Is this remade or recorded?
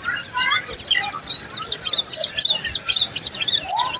recorded